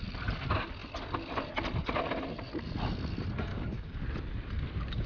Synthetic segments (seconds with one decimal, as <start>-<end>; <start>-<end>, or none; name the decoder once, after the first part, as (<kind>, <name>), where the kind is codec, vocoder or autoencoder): 3.5-4.0 (codec, DAC)